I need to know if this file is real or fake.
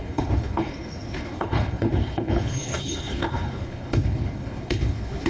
fake